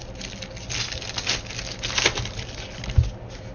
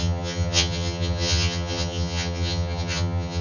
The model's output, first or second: second